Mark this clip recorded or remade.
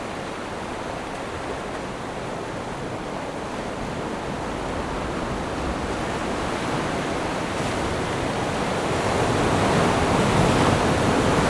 recorded